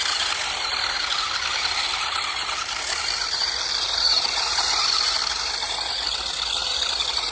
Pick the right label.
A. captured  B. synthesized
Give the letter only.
A